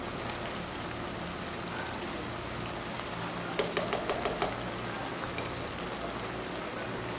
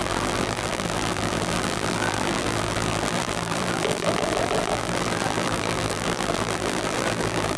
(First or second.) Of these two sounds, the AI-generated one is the second